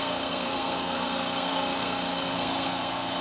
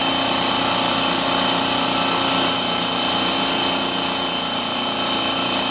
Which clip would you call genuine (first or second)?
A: second